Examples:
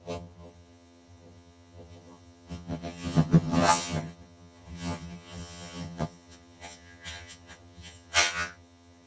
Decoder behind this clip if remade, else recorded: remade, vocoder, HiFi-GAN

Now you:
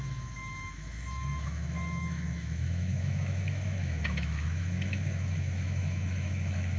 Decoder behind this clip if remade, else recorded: remade, autoencoder, DAC-VAE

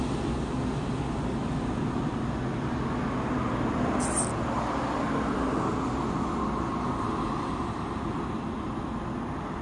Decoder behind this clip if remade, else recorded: recorded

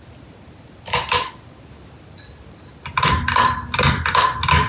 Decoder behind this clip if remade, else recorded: recorded